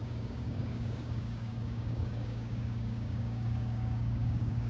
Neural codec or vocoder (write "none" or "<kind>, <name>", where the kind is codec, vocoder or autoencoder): codec, DAC